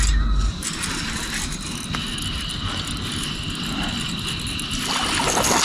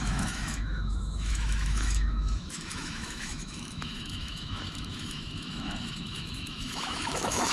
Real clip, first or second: first